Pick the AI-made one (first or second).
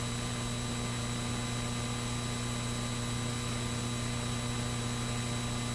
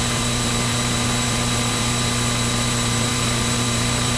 second